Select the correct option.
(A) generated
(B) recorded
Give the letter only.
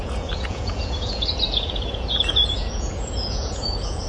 A